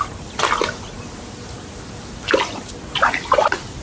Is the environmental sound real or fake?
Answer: real